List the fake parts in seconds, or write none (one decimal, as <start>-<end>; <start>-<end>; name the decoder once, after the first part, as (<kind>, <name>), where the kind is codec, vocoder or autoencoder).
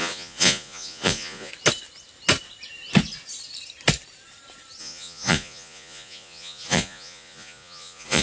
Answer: 0.0-1.5 (vocoder, Vocos); 4.8-8.2